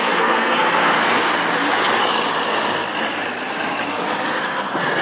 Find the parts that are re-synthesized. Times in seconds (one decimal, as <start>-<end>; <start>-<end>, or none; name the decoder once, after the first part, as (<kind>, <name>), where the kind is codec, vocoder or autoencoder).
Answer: 0.0-1.3 (codec, SNAC); 4.3-5.0